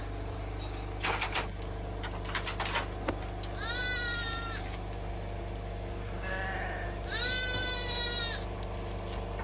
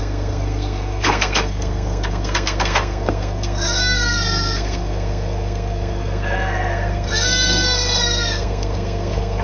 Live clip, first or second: first